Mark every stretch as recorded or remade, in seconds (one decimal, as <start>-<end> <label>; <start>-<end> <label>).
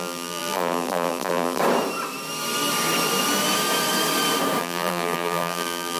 0.0-1.6 remade; 1.6-4.6 recorded; 4.6-6.0 remade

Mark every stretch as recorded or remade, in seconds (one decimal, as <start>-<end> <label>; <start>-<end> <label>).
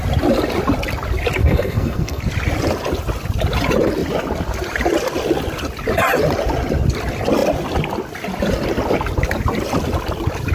0.0-1.4 recorded; 1.4-2.2 remade; 2.2-10.5 recorded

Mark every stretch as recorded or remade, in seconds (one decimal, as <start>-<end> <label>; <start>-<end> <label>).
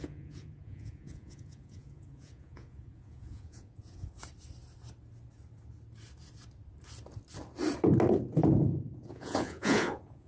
0.0-4.2 remade; 4.2-8.6 recorded; 8.6-10.3 remade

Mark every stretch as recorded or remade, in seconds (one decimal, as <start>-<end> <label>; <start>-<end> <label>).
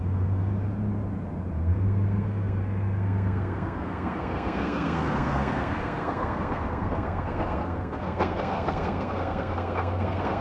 0.0-0.5 remade; 0.5-1.5 recorded; 1.5-10.4 remade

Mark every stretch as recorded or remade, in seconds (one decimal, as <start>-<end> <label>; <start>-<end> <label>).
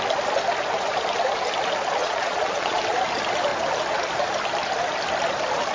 0.0-2.0 recorded; 2.0-2.8 remade; 2.8-5.7 recorded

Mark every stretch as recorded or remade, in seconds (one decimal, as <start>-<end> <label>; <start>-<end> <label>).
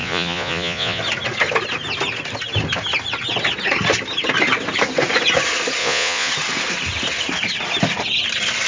0.0-1.0 remade; 1.0-5.8 recorded; 5.8-6.3 remade; 6.3-8.7 recorded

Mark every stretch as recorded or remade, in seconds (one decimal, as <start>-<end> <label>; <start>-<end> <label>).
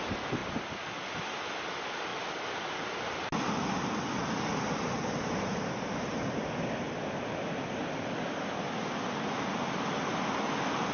0.0-10.9 recorded